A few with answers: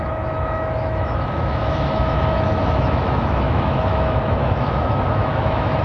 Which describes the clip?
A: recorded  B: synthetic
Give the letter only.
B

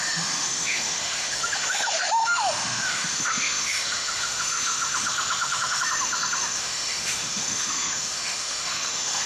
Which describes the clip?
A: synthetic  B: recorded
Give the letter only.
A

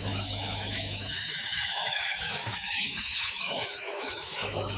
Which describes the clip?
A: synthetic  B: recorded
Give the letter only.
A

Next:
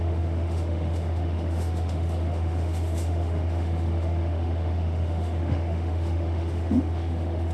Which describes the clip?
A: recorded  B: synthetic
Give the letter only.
B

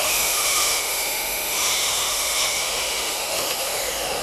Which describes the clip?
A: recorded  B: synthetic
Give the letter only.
B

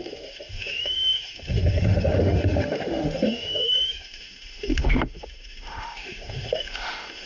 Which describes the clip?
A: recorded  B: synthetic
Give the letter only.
B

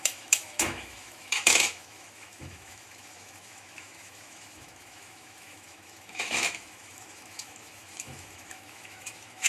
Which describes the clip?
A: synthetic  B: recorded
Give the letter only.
A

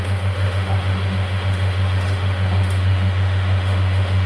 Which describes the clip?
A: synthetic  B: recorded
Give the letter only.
A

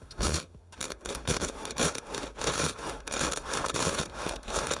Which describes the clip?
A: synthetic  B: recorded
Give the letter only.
A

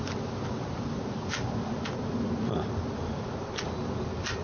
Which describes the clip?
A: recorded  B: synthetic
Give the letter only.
A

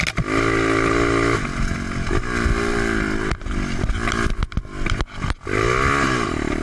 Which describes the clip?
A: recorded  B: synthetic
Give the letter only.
A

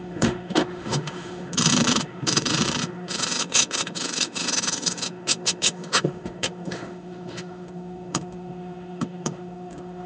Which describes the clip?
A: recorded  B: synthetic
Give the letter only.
B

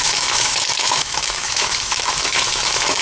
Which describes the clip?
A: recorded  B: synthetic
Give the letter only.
B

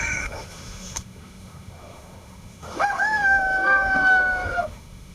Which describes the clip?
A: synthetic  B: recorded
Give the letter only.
A